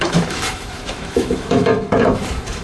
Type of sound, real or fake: fake